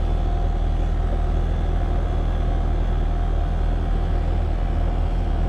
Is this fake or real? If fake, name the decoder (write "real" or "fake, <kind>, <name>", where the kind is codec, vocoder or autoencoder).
real